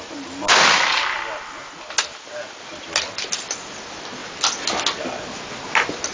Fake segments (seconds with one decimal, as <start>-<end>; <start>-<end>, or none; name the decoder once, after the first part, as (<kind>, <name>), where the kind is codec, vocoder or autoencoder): none